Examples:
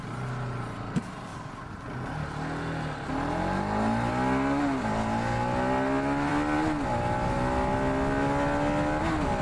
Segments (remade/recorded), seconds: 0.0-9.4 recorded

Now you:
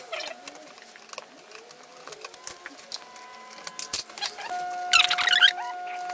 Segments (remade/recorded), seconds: 0.0-6.1 recorded

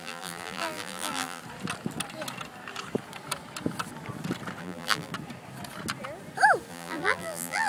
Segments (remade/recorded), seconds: 0.0-1.4 remade; 1.4-4.6 recorded; 4.6-5.1 remade; 5.1-6.7 recorded; 6.7-7.7 remade

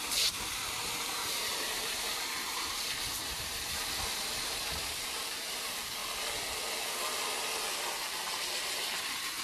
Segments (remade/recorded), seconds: 0.0-6.0 remade; 6.0-9.0 recorded; 9.0-9.4 remade

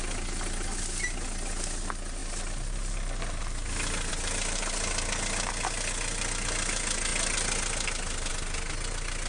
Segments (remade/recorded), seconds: 0.0-9.3 recorded

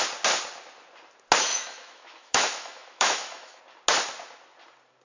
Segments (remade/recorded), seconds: 0.0-1.5 recorded; 1.5-3.6 remade; 3.6-5.0 recorded

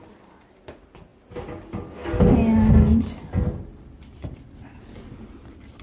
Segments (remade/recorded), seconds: 0.0-5.8 recorded

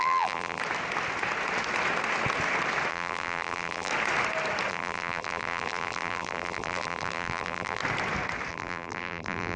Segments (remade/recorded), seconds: 0.0-0.6 remade; 0.6-2.9 recorded; 2.9-3.9 remade; 3.9-4.7 recorded; 4.7-7.8 remade; 7.8-8.5 recorded; 8.5-9.6 remade